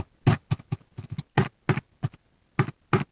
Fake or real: real